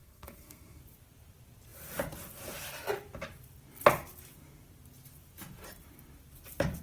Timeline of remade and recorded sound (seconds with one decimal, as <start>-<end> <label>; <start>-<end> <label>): 0.0-0.8 remade; 0.8-6.8 recorded